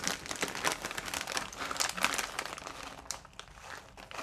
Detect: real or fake real